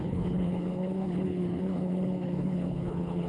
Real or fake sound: fake